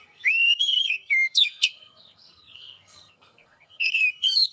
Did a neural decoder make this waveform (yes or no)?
yes